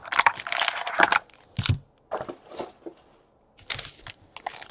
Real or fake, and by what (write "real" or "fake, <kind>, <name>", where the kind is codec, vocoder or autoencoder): real